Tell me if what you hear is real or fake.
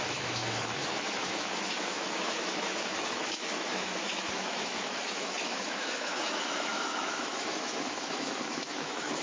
fake